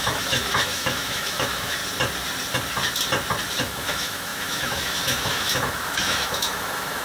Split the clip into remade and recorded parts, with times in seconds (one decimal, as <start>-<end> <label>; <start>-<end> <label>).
0.0-1.8 remade; 1.8-3.6 recorded; 3.6-7.0 remade